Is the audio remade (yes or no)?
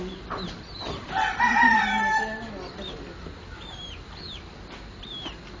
no